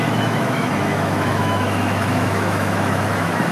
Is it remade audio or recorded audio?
remade